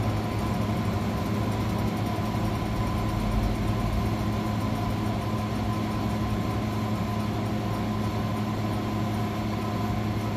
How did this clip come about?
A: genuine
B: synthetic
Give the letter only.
A